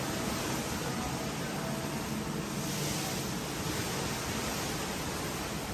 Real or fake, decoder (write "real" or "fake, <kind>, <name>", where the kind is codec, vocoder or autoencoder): real